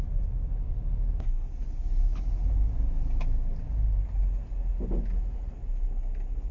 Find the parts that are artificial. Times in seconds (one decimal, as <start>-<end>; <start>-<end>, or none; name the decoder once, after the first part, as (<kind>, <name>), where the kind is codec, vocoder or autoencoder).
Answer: none